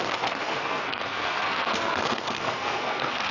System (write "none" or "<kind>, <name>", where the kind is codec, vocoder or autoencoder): codec, SNAC